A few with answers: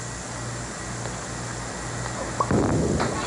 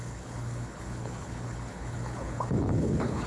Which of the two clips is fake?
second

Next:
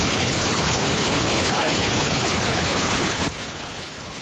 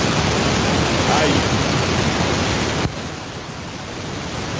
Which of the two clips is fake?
first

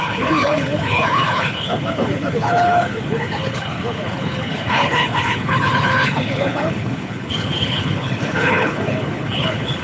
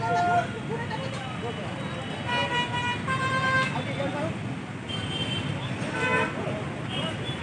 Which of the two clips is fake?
first